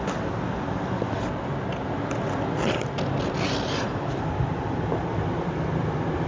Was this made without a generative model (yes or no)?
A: yes